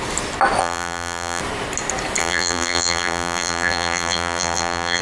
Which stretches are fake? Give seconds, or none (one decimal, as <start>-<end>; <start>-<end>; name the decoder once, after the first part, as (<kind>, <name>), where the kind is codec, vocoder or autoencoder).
0.6-1.4 (vocoder, BigVGAN v2); 2.2-5.0